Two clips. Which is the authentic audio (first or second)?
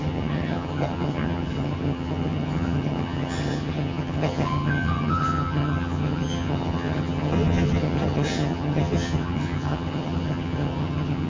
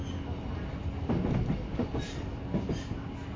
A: second